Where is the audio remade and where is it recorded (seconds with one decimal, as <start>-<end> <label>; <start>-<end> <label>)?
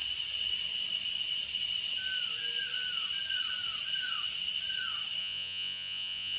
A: 0.0-5.2 recorded; 5.2-6.4 remade